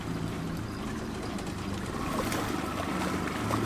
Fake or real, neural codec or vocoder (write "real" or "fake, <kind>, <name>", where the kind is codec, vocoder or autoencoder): real